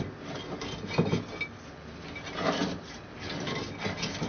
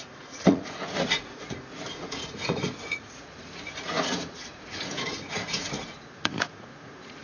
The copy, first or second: second